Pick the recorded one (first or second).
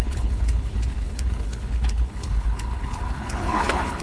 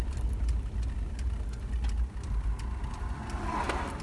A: second